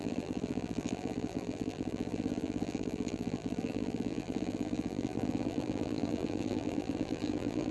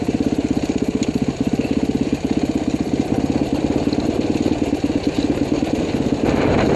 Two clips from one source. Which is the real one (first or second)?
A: second